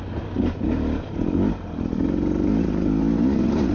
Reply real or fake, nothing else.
real